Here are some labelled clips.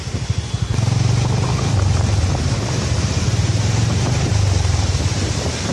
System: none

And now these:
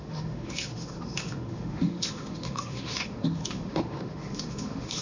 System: autoencoder, DAC-VAE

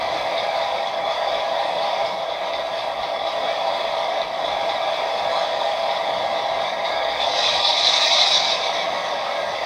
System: codec, DAC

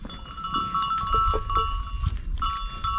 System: none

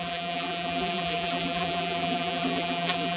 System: vocoder, BigVGAN v2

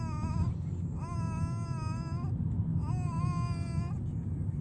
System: none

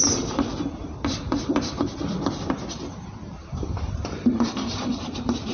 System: vocoder, BigVGAN v2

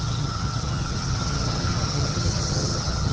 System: vocoder, HiFi-GAN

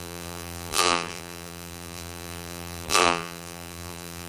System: vocoder, BigVGAN v2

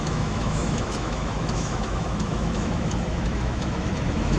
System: autoencoder, DAC-VAE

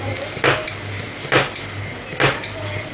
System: none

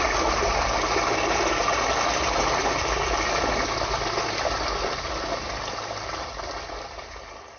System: none